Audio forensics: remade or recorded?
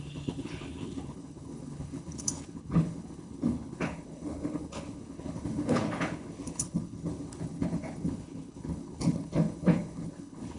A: remade